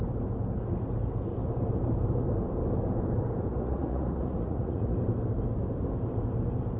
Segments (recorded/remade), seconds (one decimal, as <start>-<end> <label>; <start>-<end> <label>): 0.0-3.5 recorded; 3.5-5.0 remade; 5.0-6.8 recorded